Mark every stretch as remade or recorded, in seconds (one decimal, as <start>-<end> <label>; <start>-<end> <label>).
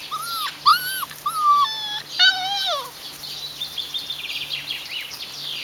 0.0-5.6 recorded